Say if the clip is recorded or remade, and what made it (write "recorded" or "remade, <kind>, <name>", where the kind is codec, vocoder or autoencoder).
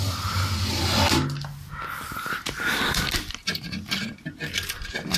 recorded